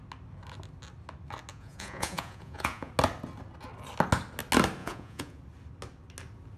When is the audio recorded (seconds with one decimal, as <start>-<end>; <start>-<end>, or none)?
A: 0.0-1.5; 2.9-4.8; 5.4-6.6